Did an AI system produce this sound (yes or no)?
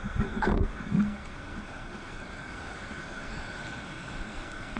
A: yes